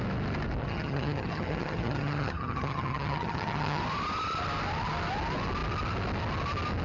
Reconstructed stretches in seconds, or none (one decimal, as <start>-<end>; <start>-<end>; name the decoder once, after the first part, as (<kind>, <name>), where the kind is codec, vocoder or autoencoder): 0.6-3.8 (vocoder, HiFi-GAN)

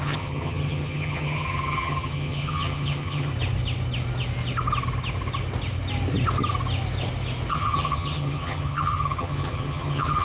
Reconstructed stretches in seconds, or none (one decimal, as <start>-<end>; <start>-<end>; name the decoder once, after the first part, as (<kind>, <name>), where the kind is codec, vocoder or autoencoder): 0.0-3.3 (vocoder, HiFi-GAN); 7.5-10.2

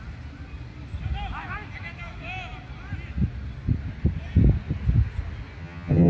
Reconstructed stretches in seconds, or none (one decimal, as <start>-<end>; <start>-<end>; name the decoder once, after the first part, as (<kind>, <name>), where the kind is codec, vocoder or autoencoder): 5.6-6.1 (vocoder, HiFi-GAN)

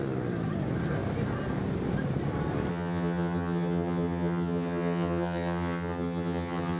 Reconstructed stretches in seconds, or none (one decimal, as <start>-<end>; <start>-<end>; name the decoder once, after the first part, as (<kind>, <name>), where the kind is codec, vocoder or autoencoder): 2.7-6.8 (vocoder, HiFi-GAN)

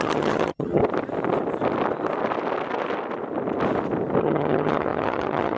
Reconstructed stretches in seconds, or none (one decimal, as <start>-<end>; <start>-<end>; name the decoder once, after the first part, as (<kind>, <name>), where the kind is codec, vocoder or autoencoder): 0.0-0.8 (vocoder, HiFi-GAN); 4.2-5.6